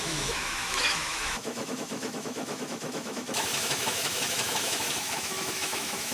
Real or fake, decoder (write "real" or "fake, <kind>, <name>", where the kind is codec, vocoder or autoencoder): fake, autoencoder, DAC-VAE